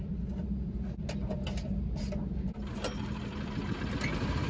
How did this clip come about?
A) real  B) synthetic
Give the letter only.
A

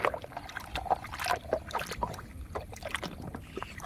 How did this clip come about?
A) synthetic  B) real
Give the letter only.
B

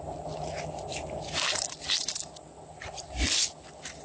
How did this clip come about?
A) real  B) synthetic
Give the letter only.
A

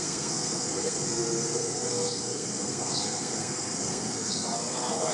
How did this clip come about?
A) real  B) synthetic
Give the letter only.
B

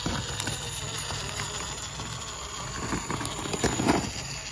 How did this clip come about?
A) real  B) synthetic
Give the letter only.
A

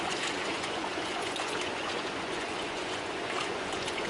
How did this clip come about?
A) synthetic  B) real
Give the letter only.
A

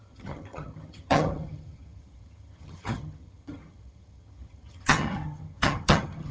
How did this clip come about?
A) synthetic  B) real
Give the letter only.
A